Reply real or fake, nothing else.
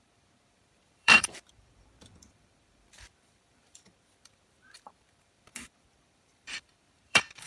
fake